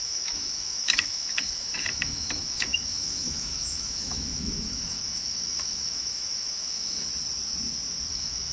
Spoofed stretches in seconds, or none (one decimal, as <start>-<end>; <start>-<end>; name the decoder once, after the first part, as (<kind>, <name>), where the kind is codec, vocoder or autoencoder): 0.0-7.1 (autoencoder, DAC-VAE); 8.1-8.5

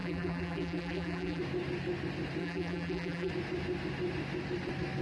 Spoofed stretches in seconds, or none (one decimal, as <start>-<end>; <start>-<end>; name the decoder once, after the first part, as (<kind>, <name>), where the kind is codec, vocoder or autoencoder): 0.0-1.4 (vocoder, BigVGAN v2); 2.4-3.3

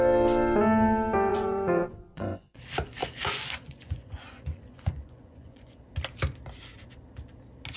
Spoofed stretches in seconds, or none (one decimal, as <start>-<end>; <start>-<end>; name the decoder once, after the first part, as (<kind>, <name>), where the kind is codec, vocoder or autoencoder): 1.3-2.6 (vocoder, Vocos); 3.0-5.8

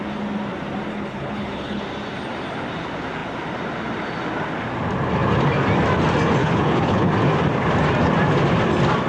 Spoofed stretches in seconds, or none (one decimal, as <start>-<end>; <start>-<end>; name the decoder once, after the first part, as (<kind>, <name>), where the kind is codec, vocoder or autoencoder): 0.9-1.8 (codec, HILCodec); 6.4-7.1

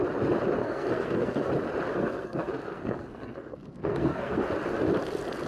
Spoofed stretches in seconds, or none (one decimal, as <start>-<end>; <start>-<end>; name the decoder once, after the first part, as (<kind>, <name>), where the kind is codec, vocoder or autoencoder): 0.6-1.5 (codec, SNAC); 1.9-4.5

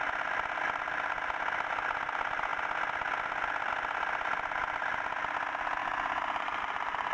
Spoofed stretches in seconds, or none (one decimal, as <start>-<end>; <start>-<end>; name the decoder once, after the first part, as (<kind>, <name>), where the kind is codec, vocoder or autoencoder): none

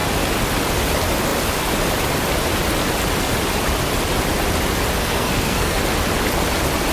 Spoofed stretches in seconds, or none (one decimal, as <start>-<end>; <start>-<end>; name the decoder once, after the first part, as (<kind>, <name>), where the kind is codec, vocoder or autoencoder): 5.0-5.8 (codec, SNAC)

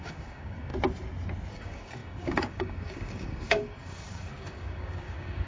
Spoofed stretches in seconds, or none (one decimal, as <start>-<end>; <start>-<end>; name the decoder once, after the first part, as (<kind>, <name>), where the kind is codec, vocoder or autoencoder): 0.0-0.7 (codec, DAC); 1.5-5.5